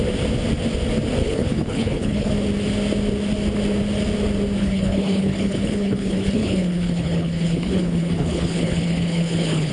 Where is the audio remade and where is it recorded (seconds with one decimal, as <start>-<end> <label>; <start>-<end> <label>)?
0.0-1.2 recorded; 1.2-2.3 remade; 2.3-4.6 recorded; 4.6-9.7 remade